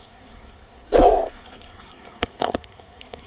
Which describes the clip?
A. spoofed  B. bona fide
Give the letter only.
A